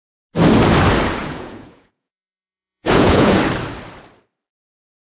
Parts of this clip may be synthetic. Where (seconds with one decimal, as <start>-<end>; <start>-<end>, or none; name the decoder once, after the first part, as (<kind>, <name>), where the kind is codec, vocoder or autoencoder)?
1.2-3.4 (vocoder, Vocos)